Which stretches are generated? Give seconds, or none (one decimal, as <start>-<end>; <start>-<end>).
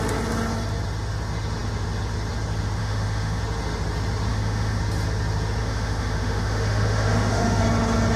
2.8-3.4; 4.3-4.8; 5.6-7.6